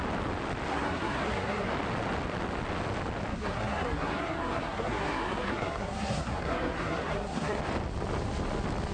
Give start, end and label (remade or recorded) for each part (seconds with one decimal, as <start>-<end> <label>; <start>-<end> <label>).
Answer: 0.0-0.7 recorded; 0.7-1.7 remade; 1.7-3.3 recorded; 3.3-7.6 remade; 7.6-8.9 recorded